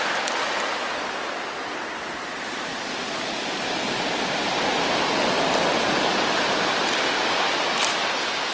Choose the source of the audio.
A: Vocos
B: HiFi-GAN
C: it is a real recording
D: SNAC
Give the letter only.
C